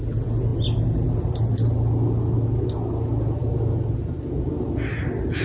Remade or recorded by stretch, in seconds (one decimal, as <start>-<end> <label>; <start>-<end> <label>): 0.0-5.4 recorded

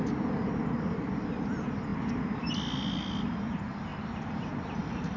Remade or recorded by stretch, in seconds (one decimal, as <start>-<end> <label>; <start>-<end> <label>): 0.0-5.2 recorded

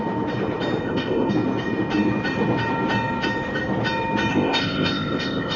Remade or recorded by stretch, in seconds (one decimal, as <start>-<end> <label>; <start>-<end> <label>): 0.0-0.8 recorded; 0.8-1.3 remade; 1.3-4.3 recorded; 4.3-5.6 remade